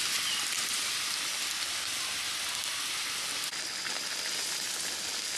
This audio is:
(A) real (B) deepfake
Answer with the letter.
A